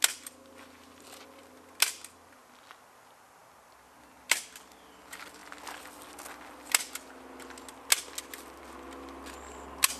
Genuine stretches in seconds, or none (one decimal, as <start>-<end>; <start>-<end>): 0.0-10.0